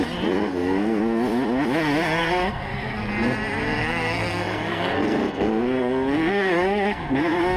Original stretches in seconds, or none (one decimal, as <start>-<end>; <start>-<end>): 0.0-0.4; 1.0-2.2; 3.1-3.8